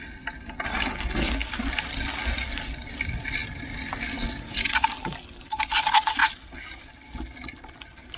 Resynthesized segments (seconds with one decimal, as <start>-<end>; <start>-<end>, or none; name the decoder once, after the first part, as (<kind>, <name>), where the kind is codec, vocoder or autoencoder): 1.4-2.1 (vocoder, BigVGAN v2); 6.2-6.9